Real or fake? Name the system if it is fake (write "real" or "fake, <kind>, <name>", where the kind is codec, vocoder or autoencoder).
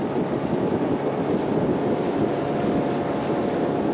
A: real